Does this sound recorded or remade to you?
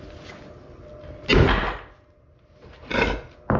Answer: recorded